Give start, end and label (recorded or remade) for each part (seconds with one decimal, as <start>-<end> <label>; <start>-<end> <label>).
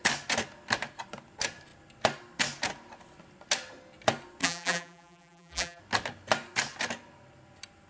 0.0-4.4 recorded; 4.4-5.8 remade; 5.8-7.9 recorded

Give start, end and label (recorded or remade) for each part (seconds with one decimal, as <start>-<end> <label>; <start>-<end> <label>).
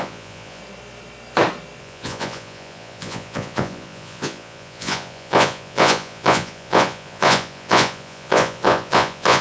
0.0-0.6 remade; 0.6-1.8 recorded; 1.8-9.4 remade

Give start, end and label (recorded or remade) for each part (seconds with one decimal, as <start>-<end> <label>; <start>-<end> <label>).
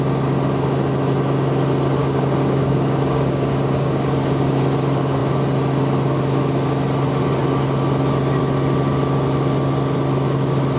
0.0-2.0 recorded; 2.0-4.6 remade; 4.6-10.8 recorded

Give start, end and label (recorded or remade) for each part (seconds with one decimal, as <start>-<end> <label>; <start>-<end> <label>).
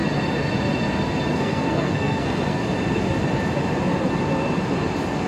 0.0-1.3 recorded; 1.3-2.6 remade; 2.6-5.3 recorded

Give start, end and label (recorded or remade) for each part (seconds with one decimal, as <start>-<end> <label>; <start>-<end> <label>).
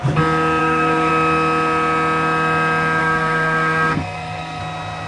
0.0-0.6 recorded; 0.6-1.1 remade; 1.1-3.0 recorded; 3.0-4.6 remade; 4.6-5.1 recorded